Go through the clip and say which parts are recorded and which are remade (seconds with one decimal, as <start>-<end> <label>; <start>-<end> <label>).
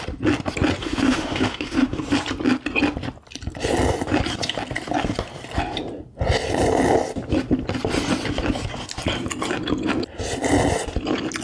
0.0-0.8 recorded; 0.8-2.0 remade; 2.0-11.4 recorded